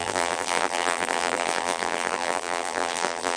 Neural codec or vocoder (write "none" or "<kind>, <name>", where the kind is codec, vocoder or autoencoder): vocoder, BigVGAN v2